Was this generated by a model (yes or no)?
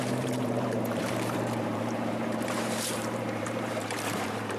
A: yes